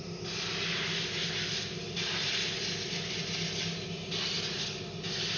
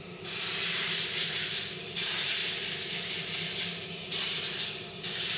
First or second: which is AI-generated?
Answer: second